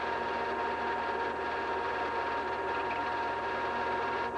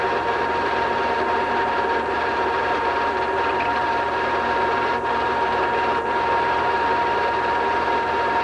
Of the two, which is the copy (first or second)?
second